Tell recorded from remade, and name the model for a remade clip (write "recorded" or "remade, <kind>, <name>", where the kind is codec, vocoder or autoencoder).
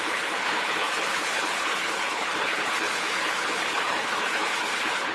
remade, codec, HILCodec